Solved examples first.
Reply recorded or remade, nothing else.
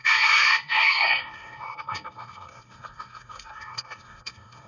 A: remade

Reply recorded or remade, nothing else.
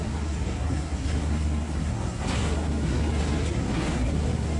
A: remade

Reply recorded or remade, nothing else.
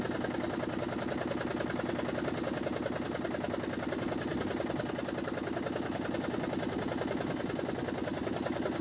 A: recorded